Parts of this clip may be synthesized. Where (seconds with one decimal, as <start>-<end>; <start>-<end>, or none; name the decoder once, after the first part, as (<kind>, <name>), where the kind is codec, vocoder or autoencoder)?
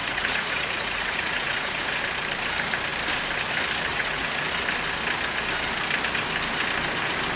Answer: 0.0-2.0 (vocoder, Vocos); 3.9-4.5